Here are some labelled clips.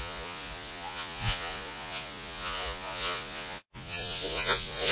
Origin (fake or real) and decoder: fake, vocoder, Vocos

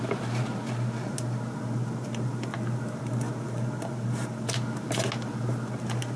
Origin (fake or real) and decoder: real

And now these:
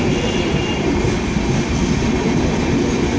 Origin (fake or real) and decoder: real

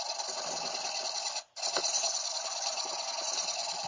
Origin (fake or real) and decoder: real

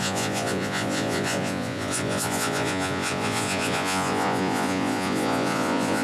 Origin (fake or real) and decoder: fake, vocoder, Vocos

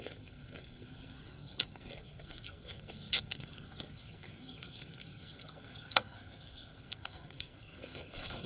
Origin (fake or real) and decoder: fake, codec, SNAC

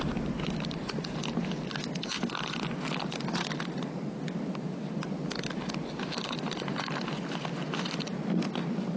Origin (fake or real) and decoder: real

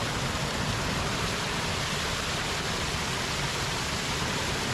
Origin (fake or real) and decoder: real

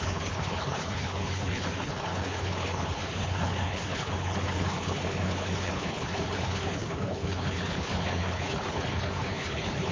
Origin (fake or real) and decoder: fake, codec, HILCodec